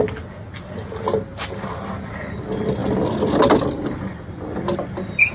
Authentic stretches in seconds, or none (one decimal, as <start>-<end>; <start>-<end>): 0.0-5.3